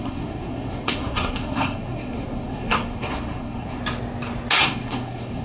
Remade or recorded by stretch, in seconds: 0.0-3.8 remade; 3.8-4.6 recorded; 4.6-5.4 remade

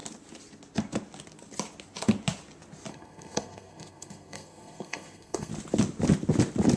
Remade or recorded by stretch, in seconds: 0.0-2.9 recorded; 2.9-5.5 remade; 5.5-6.8 recorded

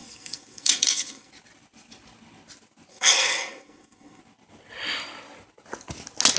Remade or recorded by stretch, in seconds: 0.0-1.3 remade; 1.3-2.9 recorded; 2.9-4.2 remade; 4.2-6.4 recorded

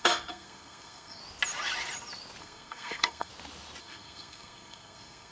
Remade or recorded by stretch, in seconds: 0.0-1.2 remade; 1.2-2.4 recorded; 2.4-3.3 remade; 3.3-3.8 recorded; 3.8-5.3 remade

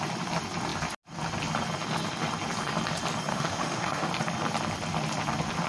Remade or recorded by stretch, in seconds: 0.0-3.3 recorded; 3.3-4.1 remade; 4.1-5.7 recorded

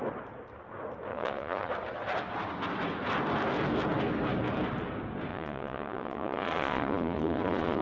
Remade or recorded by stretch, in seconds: 0.0-1.1 recorded; 1.1-1.7 remade; 1.7-5.3 recorded; 5.3-7.8 remade

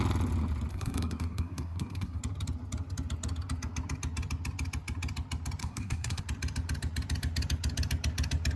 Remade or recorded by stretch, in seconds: 0.0-0.7 recorded; 0.7-2.2 remade; 2.2-5.6 recorded; 5.6-6.2 remade; 6.2-8.6 recorded